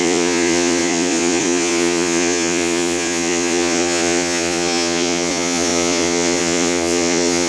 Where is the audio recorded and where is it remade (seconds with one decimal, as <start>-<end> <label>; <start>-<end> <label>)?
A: 0.0-7.5 remade

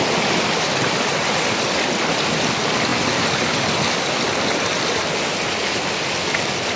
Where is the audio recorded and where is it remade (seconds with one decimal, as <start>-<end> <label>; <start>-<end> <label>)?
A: 0.0-6.8 recorded

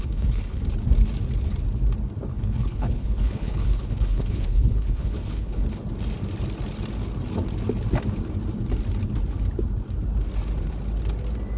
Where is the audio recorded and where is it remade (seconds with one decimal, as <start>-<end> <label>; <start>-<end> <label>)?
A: 0.0-0.6 remade; 0.6-2.3 recorded; 2.3-5.6 remade; 5.6-11.6 recorded

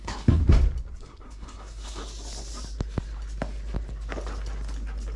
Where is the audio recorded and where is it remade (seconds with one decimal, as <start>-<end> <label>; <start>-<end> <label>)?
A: 0.0-0.4 remade; 0.4-1.0 recorded; 1.0-2.0 remade; 2.0-5.2 recorded